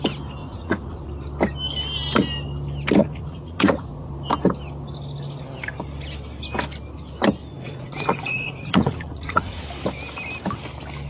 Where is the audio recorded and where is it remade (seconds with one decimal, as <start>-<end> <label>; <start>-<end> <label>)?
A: 0.0-0.4 recorded; 0.4-1.1 remade; 1.1-3.0 recorded; 3.0-4.1 remade; 4.1-7.6 recorded; 7.6-9.6 remade; 9.6-11.1 recorded